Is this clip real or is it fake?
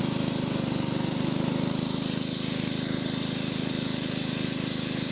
real